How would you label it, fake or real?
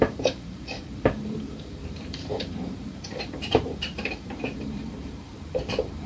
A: fake